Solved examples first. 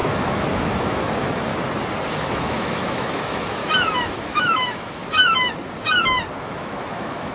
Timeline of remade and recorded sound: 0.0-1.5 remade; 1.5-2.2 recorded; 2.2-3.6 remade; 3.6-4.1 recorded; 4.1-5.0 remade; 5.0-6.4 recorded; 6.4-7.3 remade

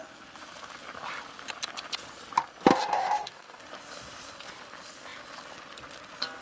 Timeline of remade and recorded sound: 0.0-2.7 recorded; 2.7-3.6 remade; 3.6-6.4 recorded